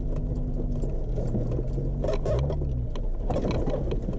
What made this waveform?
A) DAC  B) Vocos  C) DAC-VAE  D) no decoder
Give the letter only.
D